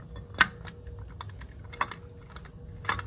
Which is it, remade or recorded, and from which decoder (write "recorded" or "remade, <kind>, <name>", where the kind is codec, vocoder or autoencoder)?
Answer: recorded